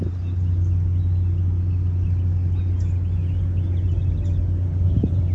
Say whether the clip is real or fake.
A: real